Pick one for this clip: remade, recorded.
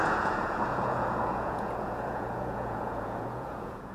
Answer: remade